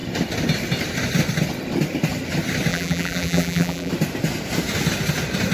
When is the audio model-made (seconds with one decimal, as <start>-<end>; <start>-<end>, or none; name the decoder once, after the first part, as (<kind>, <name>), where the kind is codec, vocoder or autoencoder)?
2.7-3.9 (vocoder, BigVGAN v2)